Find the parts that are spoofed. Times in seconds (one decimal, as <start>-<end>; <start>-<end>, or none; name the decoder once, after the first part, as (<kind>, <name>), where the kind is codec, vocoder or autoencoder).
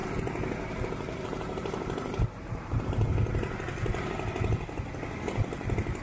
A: 0.0-2.8 (vocoder, BigVGAN v2)